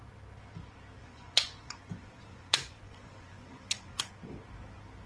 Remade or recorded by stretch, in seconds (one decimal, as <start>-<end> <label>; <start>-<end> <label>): 0.0-1.0 recorded; 1.0-4.1 remade; 4.1-5.1 recorded